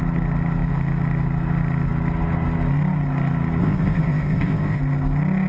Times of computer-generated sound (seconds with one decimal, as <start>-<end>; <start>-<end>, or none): 3.6-4.8